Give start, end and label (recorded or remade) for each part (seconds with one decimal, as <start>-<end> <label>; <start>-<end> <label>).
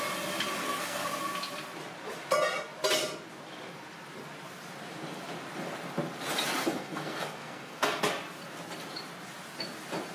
0.0-0.6 recorded; 0.6-1.2 remade; 1.2-6.6 recorded; 6.6-8.0 remade; 8.0-10.1 recorded